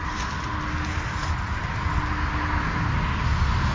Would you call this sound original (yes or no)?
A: yes